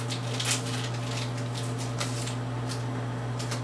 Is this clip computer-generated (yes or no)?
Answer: no